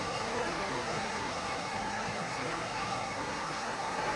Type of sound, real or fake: fake